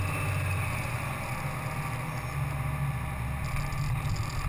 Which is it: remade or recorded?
recorded